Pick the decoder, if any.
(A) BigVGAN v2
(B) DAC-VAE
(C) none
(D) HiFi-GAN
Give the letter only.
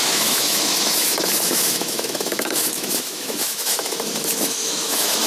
B